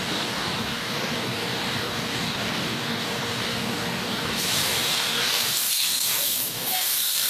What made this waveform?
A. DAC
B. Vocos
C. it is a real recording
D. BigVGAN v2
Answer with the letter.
A